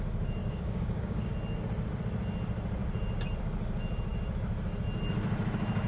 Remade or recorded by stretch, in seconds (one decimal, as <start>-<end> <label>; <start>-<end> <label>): 0.0-0.4 recorded; 0.4-1.3 remade; 1.3-5.9 recorded